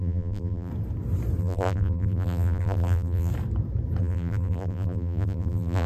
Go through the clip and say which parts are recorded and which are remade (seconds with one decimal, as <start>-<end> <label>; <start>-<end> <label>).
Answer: 0.0-0.7 remade; 0.7-1.4 recorded; 1.4-3.3 remade; 3.3-4.0 recorded; 4.0-5.9 remade